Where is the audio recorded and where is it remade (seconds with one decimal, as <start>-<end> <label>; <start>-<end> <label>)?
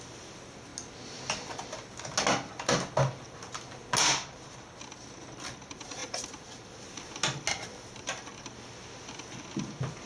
0.0-6.0 recorded; 6.0-7.1 remade; 7.1-7.7 recorded; 7.7-8.3 remade; 8.3-10.1 recorded